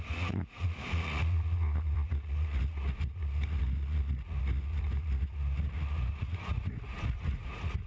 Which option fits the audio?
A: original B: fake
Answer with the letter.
B